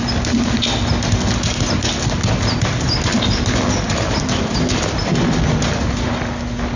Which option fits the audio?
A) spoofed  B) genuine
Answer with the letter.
B